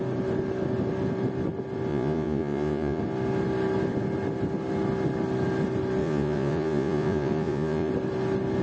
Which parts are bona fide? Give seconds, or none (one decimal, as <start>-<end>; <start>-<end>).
0.0-1.9; 3.0-6.0; 7.9-8.6